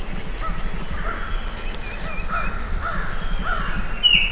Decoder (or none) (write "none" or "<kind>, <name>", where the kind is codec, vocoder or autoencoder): none